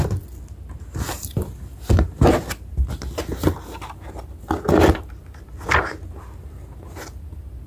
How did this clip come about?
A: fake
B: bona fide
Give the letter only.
B